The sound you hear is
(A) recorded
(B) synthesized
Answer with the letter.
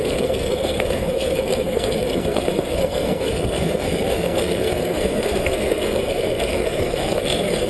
B